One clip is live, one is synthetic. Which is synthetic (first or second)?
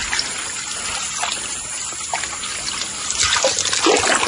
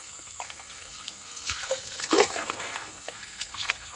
second